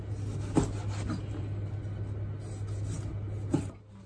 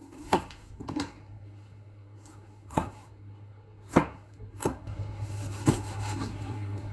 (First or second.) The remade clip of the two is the second